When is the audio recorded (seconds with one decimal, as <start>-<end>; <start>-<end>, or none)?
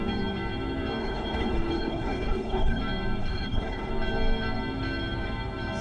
0.0-1.0; 2.8-3.2; 3.9-5.8